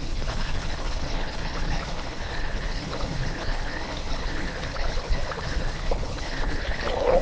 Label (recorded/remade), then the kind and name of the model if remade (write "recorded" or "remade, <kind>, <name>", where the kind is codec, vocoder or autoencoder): remade, codec, HILCodec